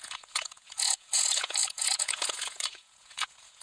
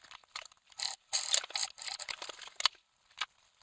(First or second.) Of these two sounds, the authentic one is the second